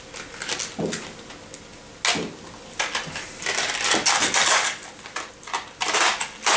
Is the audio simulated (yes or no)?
no